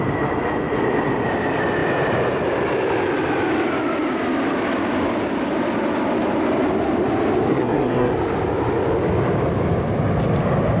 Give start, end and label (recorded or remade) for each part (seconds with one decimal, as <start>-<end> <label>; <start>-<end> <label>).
0.0-7.5 recorded; 7.5-8.1 remade; 8.1-10.8 recorded